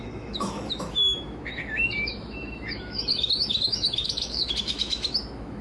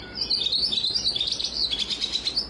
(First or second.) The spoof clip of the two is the first